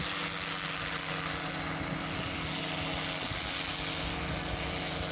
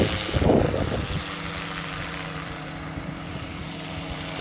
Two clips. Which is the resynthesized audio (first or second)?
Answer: second